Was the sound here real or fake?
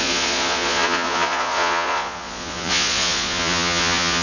fake